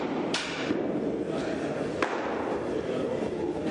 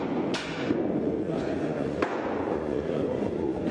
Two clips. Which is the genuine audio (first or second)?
first